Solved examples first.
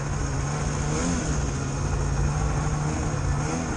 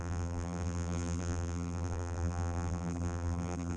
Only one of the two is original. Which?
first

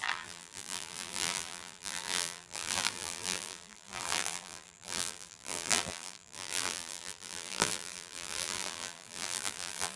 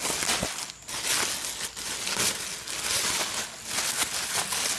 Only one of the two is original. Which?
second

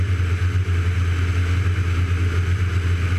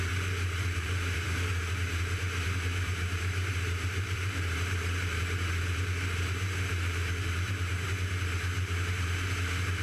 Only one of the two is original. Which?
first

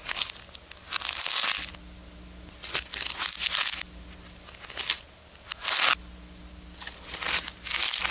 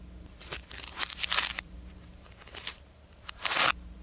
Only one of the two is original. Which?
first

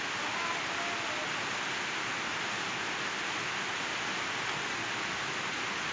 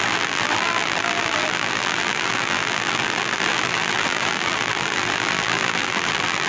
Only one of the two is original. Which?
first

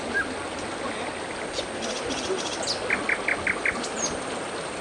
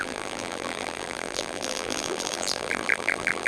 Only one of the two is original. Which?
first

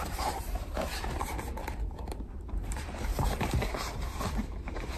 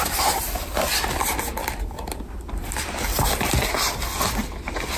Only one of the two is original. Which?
second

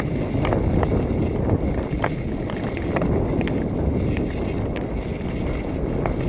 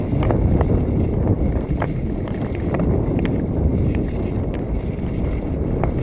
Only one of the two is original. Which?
first